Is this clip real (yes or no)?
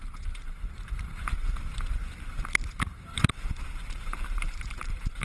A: no